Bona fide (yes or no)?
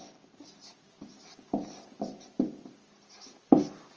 yes